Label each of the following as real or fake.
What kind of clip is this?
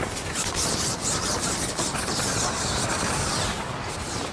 real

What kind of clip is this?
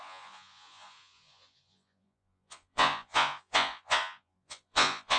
fake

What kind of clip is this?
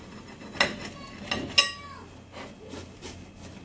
real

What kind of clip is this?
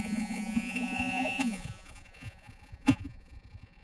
fake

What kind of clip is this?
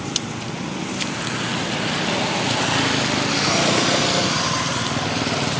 real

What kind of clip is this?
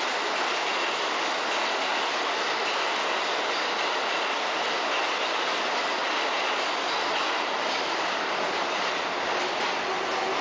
real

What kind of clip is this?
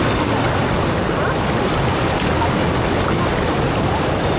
real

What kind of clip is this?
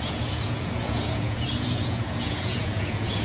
fake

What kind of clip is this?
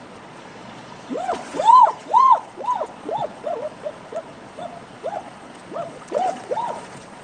fake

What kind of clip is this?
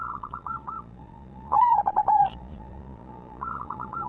fake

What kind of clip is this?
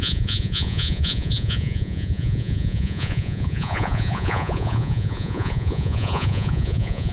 fake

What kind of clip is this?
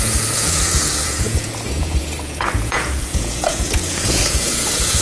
fake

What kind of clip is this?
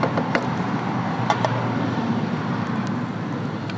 real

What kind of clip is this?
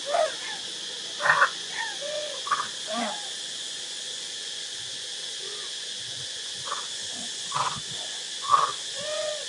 fake